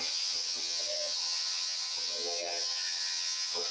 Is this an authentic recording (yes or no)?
no